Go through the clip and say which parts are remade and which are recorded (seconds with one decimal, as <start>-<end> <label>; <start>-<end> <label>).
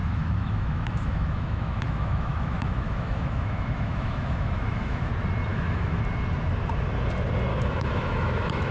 0.0-5.1 remade; 5.1-5.5 recorded; 5.5-6.0 remade; 6.0-7.5 recorded; 7.5-8.7 remade